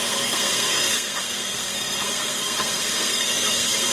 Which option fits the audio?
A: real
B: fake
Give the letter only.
B